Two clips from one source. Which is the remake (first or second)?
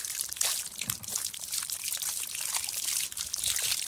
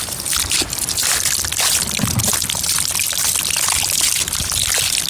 first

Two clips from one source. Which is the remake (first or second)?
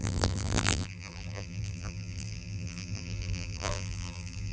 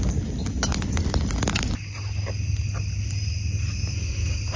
first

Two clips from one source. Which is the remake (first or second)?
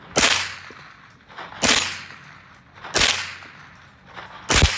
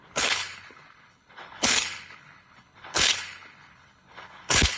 second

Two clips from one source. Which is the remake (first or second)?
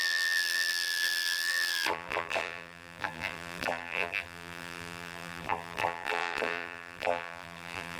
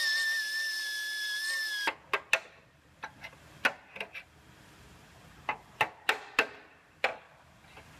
first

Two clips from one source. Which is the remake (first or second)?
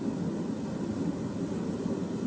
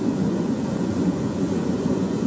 second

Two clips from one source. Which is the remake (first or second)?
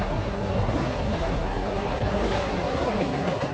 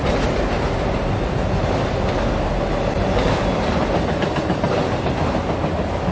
first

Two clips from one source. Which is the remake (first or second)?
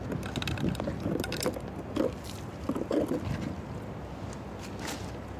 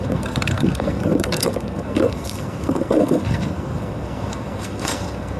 second